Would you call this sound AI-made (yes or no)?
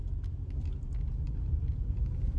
no